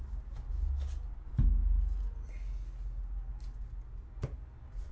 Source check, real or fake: real